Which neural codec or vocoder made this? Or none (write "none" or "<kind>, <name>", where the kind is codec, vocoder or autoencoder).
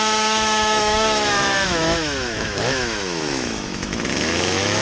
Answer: autoencoder, DAC-VAE